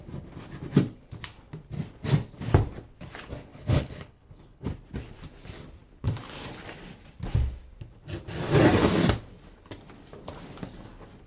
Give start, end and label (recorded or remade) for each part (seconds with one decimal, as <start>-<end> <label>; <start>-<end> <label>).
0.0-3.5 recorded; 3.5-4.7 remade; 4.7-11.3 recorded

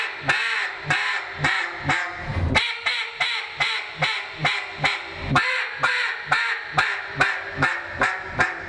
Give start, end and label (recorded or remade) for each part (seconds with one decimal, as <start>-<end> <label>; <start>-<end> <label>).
0.0-8.7 recorded

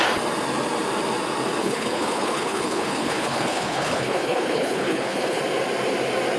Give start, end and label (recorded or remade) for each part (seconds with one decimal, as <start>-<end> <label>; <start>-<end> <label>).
0.0-1.6 recorded; 1.6-5.4 remade; 5.4-6.4 recorded

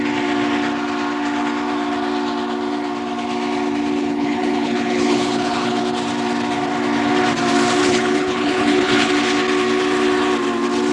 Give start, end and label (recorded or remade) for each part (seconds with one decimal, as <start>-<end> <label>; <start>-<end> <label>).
0.0-4.0 recorded; 4.0-5.8 remade; 5.8-7.8 recorded; 7.8-9.1 remade; 9.1-10.9 recorded